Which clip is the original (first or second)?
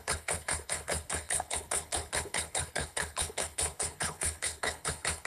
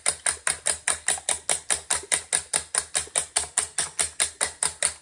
second